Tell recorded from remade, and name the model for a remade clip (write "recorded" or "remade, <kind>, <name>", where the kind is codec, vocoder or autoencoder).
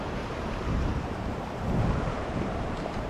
remade, vocoder, BigVGAN v2